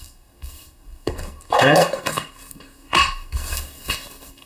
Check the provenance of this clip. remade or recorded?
remade